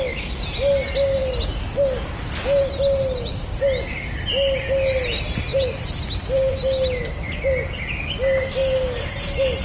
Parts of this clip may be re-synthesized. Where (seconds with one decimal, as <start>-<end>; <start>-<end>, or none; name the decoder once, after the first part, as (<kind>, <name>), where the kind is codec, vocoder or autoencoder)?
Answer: 5.5-6.5 (vocoder, BigVGAN v2)